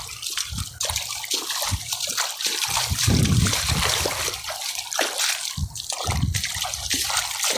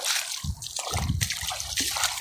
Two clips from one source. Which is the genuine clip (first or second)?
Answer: second